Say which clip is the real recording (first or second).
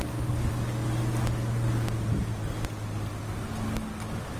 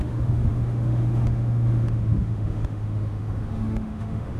first